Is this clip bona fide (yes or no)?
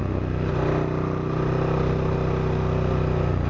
yes